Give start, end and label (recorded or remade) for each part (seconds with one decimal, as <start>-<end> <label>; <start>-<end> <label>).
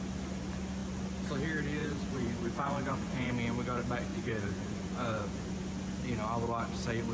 0.0-1.8 recorded; 1.8-3.3 remade; 3.3-4.1 recorded; 4.1-5.5 remade; 5.5-7.1 recorded